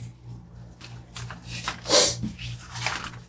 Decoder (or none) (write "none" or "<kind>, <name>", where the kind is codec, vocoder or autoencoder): none